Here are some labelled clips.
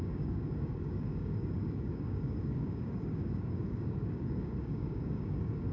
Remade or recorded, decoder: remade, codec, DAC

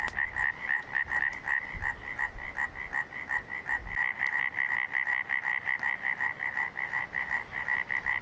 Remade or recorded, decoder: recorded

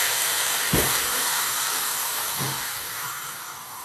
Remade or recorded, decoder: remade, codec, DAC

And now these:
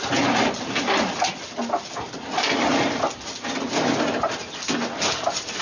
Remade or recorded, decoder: recorded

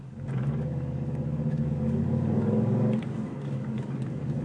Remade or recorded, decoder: remade, codec, DAC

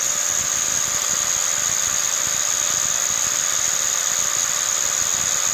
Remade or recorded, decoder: recorded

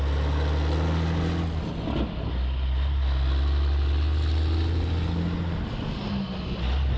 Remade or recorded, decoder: recorded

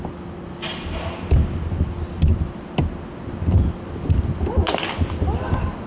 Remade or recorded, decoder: recorded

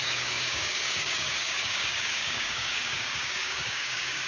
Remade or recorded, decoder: remade, codec, DAC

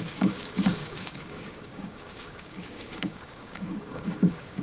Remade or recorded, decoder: remade, codec, DAC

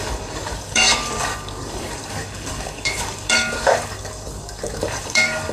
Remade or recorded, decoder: remade, codec, DAC